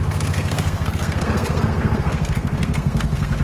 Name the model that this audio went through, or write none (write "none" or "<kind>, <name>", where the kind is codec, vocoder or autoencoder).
codec, SNAC